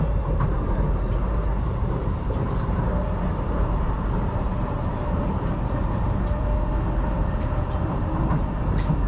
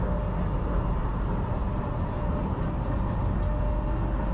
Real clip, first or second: second